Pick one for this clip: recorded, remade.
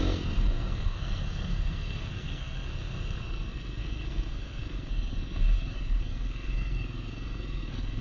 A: remade